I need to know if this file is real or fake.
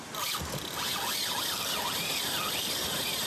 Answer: real